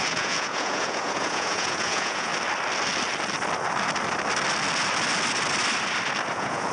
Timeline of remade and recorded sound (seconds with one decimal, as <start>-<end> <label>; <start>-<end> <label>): 0.0-2.3 remade; 2.3-6.3 recorded; 6.3-6.7 remade